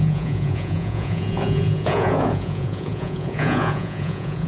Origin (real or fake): fake